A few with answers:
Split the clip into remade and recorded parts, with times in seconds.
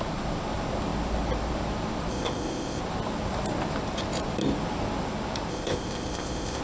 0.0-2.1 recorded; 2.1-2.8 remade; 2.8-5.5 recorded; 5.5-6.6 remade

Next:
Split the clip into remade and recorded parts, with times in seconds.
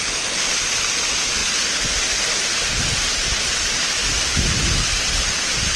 0.0-2.7 recorded; 2.7-4.1 remade; 4.1-5.8 recorded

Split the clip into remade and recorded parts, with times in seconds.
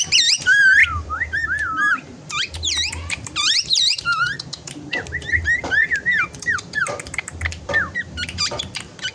0.0-9.1 remade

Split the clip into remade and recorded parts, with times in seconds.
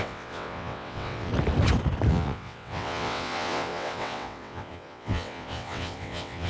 0.0-1.3 remade; 1.3-2.1 recorded; 2.1-6.5 remade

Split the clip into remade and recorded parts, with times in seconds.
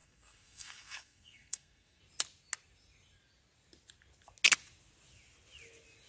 0.0-2.0 remade; 2.0-6.1 recorded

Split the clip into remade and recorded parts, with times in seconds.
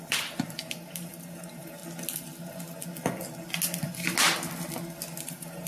0.0-1.8 remade; 1.8-5.2 recorded; 5.2-5.7 remade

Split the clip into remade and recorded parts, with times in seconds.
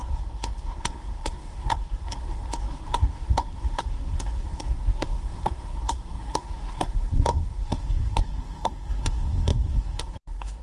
0.0-10.6 remade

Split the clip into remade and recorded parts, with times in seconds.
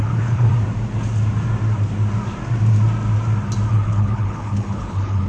0.0-0.5 remade; 0.5-3.7 recorded; 3.7-5.3 remade